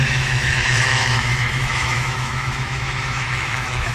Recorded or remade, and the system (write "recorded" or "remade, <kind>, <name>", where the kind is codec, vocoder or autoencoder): remade, autoencoder, DAC-VAE